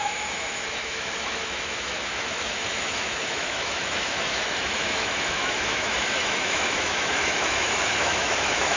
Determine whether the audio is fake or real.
fake